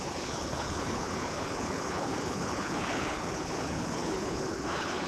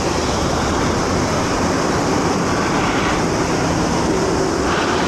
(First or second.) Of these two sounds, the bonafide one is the second